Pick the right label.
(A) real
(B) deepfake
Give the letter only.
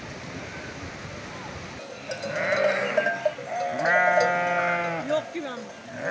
A